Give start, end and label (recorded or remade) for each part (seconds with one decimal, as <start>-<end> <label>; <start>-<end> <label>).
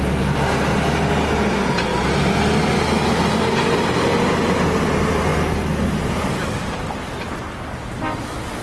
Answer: 0.0-8.6 recorded